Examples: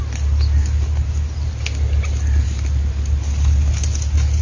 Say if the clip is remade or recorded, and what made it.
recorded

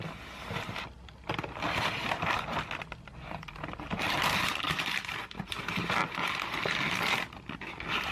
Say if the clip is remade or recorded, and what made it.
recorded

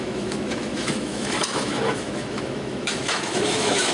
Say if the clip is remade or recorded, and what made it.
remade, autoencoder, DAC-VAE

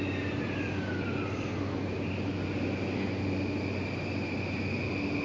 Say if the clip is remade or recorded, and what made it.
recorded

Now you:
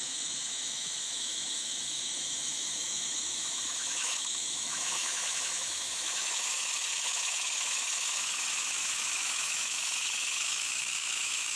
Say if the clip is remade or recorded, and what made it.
remade, autoencoder, DAC-VAE